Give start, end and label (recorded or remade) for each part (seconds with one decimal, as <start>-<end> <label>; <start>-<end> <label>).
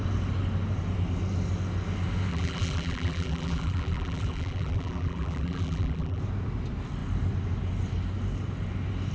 0.0-2.3 recorded; 2.3-6.2 remade; 6.2-9.1 recorded